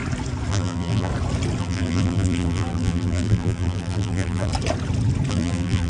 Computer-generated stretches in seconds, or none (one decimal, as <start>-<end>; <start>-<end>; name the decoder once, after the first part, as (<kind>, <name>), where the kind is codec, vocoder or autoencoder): 0.5-1.1 (vocoder, BigVGAN v2); 1.6-4.5; 5.3-5.9